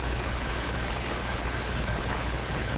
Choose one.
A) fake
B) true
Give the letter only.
A